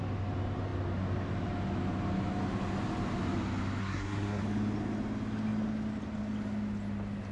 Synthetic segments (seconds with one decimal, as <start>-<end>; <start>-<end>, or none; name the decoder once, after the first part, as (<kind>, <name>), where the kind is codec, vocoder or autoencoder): 3.8-4.4 (codec, SNAC)